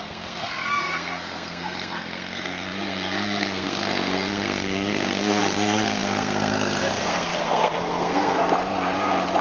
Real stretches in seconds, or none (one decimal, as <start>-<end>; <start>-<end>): 8.4-9.4

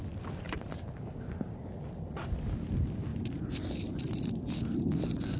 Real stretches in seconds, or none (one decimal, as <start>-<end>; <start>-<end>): 0.0-5.4

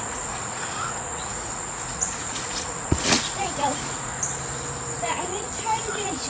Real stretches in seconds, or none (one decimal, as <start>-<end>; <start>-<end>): 4.1-4.9

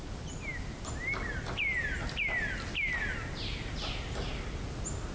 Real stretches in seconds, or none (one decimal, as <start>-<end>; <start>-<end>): 0.0-5.1

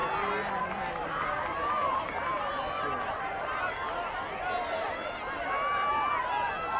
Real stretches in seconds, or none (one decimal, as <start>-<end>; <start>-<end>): 0.0-1.8; 5.9-6.8